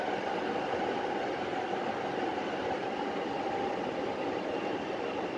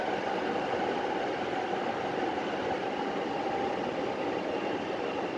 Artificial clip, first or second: second